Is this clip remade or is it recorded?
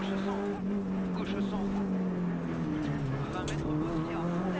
recorded